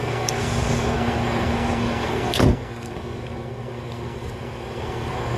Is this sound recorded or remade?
remade